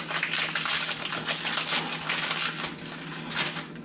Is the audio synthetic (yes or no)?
no